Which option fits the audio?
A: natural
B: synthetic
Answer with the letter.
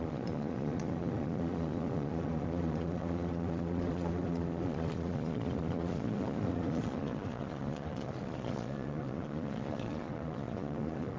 B